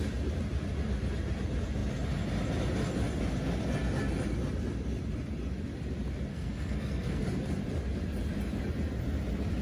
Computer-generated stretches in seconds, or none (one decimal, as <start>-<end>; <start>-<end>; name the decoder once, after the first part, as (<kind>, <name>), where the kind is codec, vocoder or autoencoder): 6.3-7.2 (codec, SNAC)